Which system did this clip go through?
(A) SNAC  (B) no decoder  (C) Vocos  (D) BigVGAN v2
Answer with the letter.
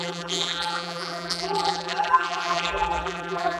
D